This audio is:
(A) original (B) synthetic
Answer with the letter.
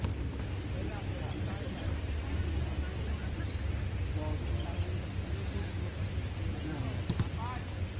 A